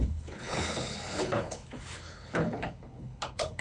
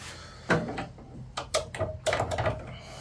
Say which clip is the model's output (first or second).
first